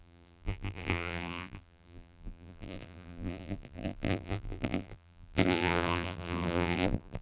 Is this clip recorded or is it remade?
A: remade